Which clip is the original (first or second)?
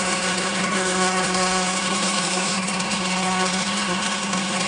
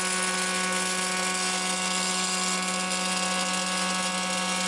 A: second